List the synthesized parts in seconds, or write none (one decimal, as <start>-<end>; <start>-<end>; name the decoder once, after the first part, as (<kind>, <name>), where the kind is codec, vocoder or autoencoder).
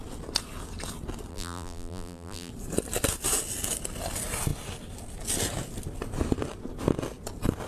1.3-2.5 (vocoder, BigVGAN v2)